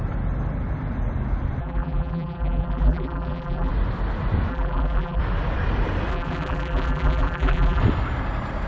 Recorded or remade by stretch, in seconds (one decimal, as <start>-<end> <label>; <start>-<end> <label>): 0.0-1.6 recorded; 1.6-3.7 remade; 3.7-4.5 recorded; 4.5-5.2 remade; 5.2-6.1 recorded; 6.1-7.8 remade; 7.8-8.7 recorded